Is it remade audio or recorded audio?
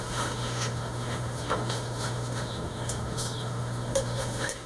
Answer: remade